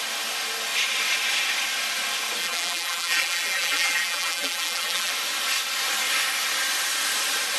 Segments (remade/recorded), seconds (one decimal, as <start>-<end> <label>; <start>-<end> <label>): 0.0-2.4 recorded; 2.4-5.1 remade; 5.1-7.6 recorded